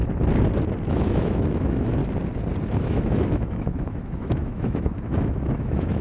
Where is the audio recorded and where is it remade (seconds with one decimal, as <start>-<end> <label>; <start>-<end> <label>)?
0.0-0.9 recorded; 0.9-2.0 remade; 2.0-2.7 recorded; 2.7-6.0 remade